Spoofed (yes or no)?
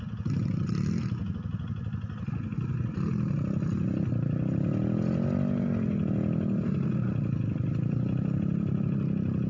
no